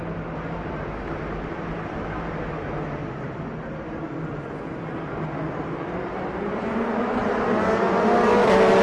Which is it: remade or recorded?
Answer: recorded